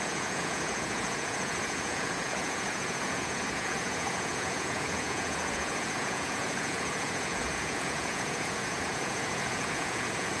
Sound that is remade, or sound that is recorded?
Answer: remade